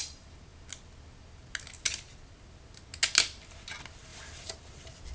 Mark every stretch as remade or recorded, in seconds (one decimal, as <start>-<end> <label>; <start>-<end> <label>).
0.0-5.1 recorded